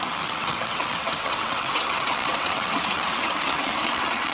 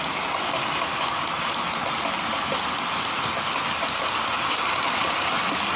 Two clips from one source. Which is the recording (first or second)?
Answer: second